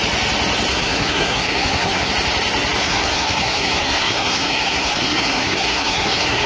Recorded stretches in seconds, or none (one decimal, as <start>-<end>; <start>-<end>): 0.0-0.7; 2.1-2.8